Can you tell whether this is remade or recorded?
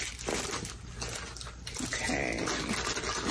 recorded